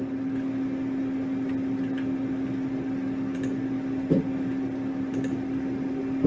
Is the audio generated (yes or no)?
no